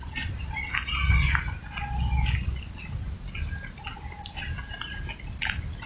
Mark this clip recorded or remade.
recorded